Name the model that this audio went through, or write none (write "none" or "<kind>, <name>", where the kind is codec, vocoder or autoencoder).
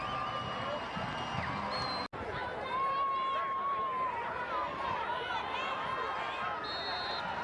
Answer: none